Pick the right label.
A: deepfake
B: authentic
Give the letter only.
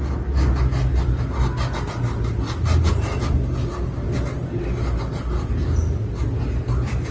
B